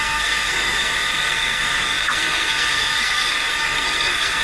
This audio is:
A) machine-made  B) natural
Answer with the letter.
A